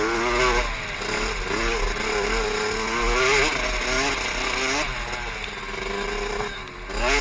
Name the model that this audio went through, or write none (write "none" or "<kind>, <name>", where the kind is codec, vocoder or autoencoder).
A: none